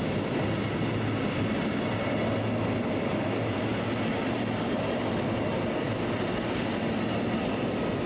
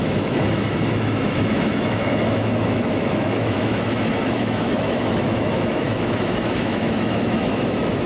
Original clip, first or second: first